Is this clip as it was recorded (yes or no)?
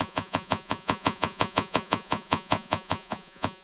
no